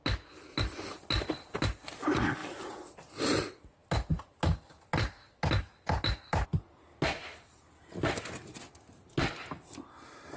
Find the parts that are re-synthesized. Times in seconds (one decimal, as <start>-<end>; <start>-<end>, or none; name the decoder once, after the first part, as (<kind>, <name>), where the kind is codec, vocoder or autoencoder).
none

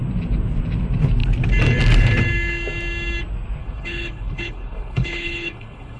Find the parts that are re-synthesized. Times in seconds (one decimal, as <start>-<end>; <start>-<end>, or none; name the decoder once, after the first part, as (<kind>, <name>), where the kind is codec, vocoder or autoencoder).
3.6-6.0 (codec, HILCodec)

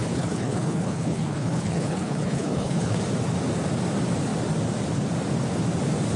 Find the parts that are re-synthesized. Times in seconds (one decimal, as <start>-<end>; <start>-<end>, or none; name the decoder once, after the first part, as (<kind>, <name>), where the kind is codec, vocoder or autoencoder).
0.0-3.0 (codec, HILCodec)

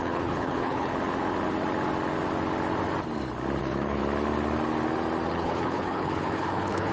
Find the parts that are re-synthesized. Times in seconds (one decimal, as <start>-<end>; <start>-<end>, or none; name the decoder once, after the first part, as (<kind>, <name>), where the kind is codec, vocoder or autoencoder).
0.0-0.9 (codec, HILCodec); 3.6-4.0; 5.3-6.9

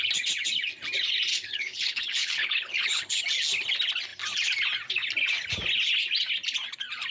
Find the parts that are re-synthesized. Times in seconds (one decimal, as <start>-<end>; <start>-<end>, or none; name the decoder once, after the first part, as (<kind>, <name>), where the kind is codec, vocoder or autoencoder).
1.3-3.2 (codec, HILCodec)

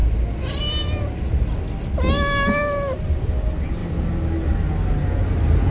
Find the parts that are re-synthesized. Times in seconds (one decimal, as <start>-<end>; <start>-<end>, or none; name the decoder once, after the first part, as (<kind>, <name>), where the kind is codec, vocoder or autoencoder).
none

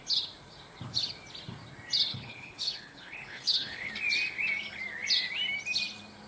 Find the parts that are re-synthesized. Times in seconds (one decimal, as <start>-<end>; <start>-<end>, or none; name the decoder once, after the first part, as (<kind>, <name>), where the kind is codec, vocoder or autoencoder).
2.1-3.9 (codec, HILCodec)

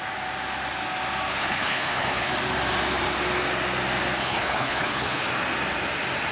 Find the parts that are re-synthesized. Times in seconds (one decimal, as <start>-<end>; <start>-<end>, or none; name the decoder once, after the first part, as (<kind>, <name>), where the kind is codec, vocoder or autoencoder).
1.3-2.3 (codec, HILCodec); 4.2-5.3